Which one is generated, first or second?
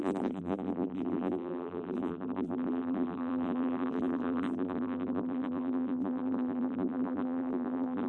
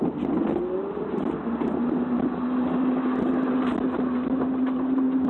first